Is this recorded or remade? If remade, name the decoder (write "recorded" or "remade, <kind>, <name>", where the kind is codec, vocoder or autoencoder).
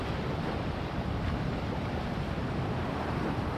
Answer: remade, vocoder, BigVGAN v2